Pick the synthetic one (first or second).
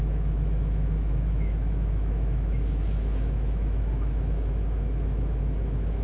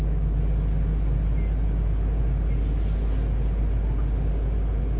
first